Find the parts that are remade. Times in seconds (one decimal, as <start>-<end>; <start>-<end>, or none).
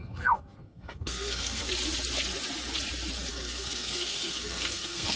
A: 0.0-1.7; 3.3-5.2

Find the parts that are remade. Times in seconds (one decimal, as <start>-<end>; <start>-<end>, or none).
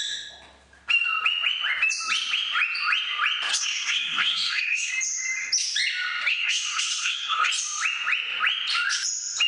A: 3.5-4.9; 6.3-7.5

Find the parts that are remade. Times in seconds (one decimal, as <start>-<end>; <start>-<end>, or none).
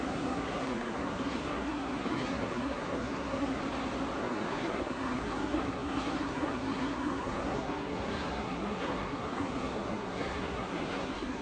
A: 0.0-3.6; 4.2-11.4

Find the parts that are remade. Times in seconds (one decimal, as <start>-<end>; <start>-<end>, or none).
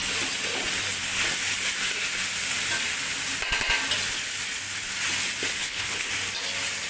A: 5.6-6.1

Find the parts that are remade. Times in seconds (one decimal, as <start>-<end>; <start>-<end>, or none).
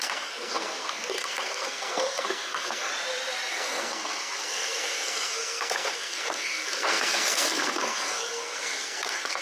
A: 0.0-2.9; 3.5-9.4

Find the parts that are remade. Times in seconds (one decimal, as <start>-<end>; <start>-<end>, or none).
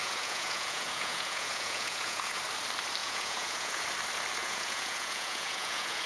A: 0.0-2.4; 3.0-3.8; 4.4-6.1